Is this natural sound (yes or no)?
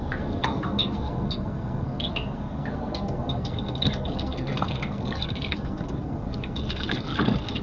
no